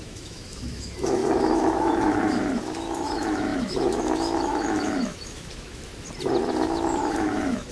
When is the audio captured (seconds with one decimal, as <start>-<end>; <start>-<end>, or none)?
5.9-6.5